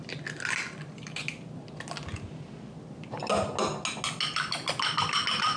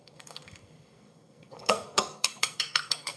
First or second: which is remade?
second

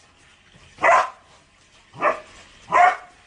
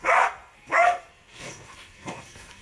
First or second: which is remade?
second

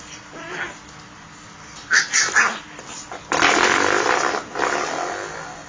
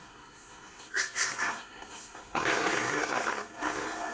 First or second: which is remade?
second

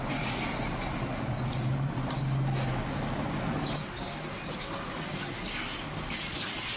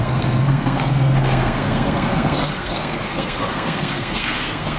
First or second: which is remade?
second